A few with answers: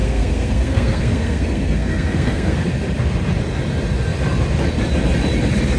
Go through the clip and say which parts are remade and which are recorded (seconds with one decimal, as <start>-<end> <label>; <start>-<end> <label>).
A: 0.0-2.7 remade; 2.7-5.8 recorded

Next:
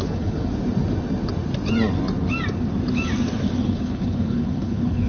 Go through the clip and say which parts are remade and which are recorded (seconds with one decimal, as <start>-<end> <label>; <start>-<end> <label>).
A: 0.0-0.5 remade; 0.5-3.6 recorded; 3.6-5.1 remade

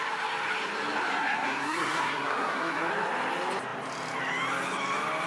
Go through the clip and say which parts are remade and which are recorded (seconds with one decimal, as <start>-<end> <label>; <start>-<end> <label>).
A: 0.0-1.1 recorded; 1.1-2.9 remade; 2.9-5.3 recorded